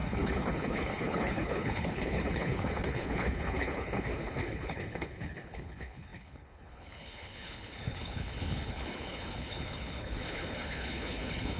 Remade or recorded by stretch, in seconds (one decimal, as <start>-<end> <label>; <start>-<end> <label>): 0.0-11.6 remade